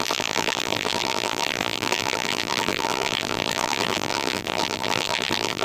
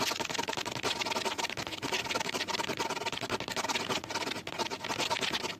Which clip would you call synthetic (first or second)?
first